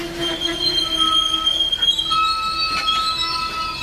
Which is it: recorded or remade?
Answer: recorded